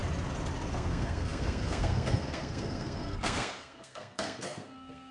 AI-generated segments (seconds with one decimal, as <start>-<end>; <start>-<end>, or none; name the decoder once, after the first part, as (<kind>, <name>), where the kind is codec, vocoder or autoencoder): 0.7-5.1 (codec, SNAC)